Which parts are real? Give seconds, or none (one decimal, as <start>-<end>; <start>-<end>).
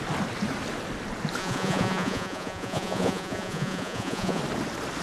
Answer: 0.0-1.4; 4.4-5.0